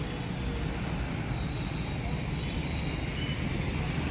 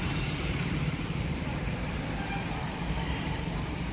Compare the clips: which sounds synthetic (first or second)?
second